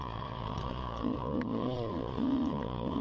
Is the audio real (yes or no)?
no